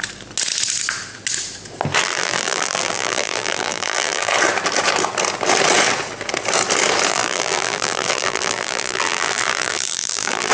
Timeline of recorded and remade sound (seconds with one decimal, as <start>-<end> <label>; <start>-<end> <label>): 0.0-2.0 recorded; 2.0-4.3 remade; 4.3-7.1 recorded; 7.1-10.5 remade